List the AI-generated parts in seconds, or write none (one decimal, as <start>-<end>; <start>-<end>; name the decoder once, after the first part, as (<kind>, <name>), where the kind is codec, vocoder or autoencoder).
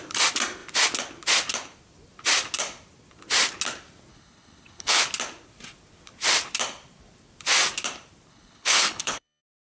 4.1-5.0 (codec, HILCodec); 8.3-9.4